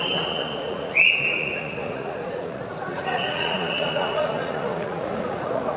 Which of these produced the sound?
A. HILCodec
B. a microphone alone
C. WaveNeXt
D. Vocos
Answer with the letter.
D